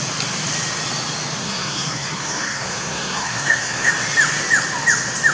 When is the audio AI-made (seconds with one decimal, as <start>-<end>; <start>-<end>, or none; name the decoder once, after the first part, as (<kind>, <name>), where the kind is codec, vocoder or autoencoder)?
1.4-3.9 (codec, SNAC)